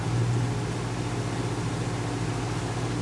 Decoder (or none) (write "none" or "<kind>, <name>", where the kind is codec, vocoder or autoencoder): none